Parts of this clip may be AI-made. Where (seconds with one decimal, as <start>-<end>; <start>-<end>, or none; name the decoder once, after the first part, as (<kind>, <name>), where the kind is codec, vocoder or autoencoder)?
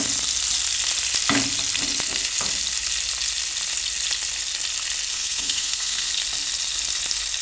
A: 5.1-6.1 (codec, SNAC)